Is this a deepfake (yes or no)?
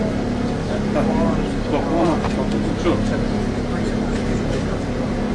no